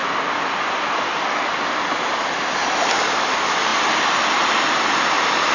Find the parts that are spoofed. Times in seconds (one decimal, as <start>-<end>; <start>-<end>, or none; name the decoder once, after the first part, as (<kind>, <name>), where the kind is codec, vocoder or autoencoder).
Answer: none